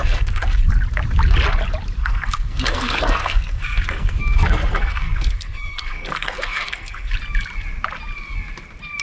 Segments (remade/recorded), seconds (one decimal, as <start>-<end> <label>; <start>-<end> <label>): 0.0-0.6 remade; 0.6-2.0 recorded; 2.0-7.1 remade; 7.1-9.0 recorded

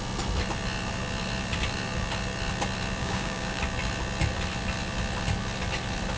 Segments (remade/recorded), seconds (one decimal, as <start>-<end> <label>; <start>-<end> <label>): 0.0-3.0 recorded; 3.0-3.6 remade; 3.6-6.2 recorded

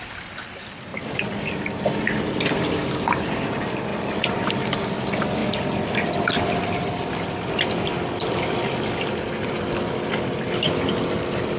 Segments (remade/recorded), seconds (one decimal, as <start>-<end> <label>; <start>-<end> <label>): 0.0-0.9 recorded; 0.9-1.6 remade; 1.6-3.9 recorded; 3.9-4.5 remade; 4.5-5.4 recorded; 5.4-6.3 remade; 6.3-11.6 recorded

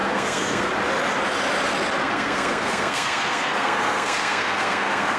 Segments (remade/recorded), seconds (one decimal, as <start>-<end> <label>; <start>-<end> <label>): 0.0-0.7 remade; 0.7-2.0 recorded; 2.0-5.2 remade